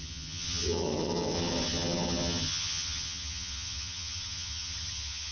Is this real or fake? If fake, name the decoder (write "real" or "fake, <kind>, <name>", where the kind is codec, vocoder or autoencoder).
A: fake, vocoder, HiFi-GAN